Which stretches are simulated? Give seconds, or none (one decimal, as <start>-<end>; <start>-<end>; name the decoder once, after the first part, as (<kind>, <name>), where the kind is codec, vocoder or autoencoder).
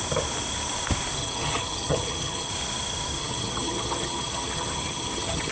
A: 1.2-2.5 (vocoder, HiFi-GAN); 3.2-5.5